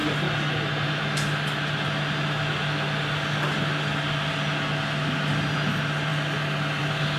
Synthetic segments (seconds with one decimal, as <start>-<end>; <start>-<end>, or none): none